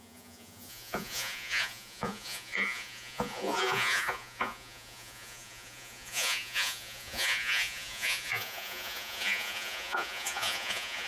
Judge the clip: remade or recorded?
remade